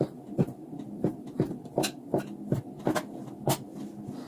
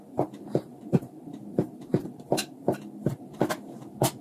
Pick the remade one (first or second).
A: second